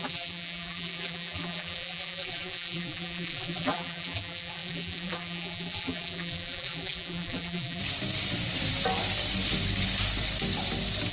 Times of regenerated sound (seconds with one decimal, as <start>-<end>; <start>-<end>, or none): 0.0-7.8